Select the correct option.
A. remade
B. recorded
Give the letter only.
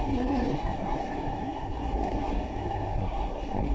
A